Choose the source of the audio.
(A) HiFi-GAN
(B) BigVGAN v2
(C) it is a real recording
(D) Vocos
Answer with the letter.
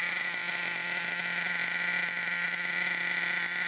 C